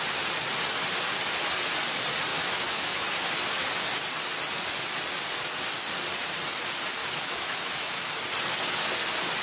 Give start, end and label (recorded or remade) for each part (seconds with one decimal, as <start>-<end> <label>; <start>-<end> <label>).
0.0-2.3 recorded; 2.3-3.1 remade; 3.1-7.0 recorded; 7.0-8.1 remade; 8.1-9.4 recorded

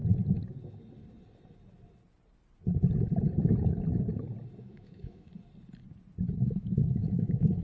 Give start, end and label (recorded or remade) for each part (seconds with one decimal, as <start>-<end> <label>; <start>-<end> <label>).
0.0-4.6 recorded; 4.6-5.3 remade; 5.3-6.4 recorded; 6.4-7.6 remade

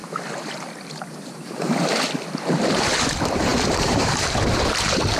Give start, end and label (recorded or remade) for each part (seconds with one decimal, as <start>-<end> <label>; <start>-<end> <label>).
0.0-3.1 recorded; 3.1-5.2 remade

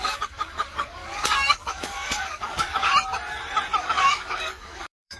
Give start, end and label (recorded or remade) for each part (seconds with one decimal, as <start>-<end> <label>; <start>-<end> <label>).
0.0-2.9 remade; 2.9-3.8 recorded; 3.8-5.2 remade

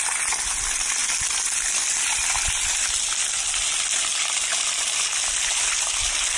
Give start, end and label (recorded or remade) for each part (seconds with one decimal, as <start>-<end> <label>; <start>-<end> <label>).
0.0-6.4 recorded

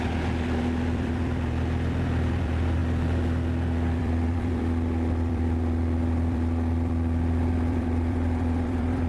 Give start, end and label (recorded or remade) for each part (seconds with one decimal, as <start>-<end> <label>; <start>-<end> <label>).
0.0-2.8 remade; 2.8-4.0 recorded; 4.0-9.1 remade